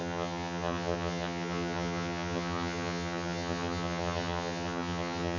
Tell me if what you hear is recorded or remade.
remade